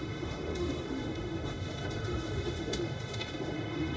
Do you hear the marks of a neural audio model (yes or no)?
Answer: yes